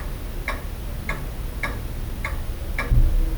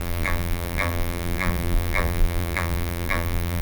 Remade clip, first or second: second